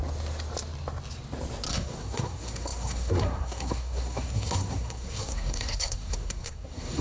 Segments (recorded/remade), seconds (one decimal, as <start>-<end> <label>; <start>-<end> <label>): 0.0-1.7 recorded; 1.7-7.0 remade